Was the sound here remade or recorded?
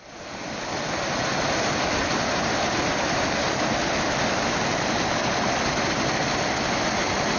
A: recorded